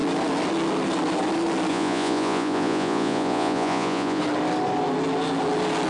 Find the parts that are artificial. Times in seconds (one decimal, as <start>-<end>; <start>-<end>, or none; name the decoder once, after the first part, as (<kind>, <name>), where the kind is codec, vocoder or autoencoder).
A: 1.7-4.2 (vocoder, Vocos)